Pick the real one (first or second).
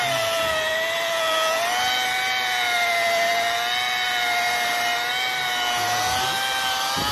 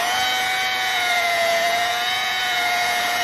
first